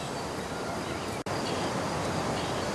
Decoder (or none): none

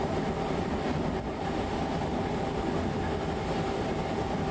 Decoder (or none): none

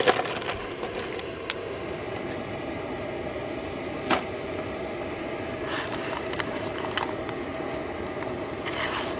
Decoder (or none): none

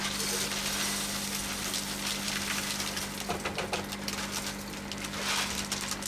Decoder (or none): none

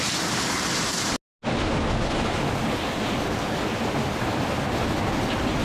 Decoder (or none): none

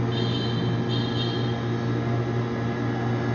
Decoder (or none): none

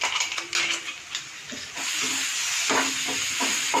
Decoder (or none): none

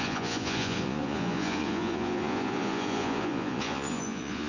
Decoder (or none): vocoder, Vocos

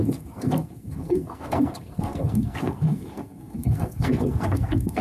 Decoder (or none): codec, SNAC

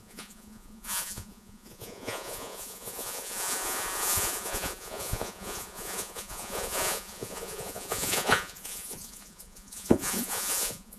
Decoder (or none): vocoder, Vocos